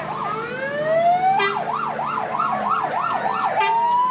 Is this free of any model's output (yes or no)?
yes